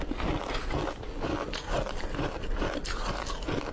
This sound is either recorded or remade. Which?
recorded